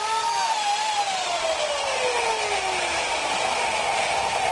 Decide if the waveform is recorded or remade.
recorded